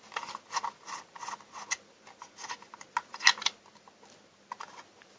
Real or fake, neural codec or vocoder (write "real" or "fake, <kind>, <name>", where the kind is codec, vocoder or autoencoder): real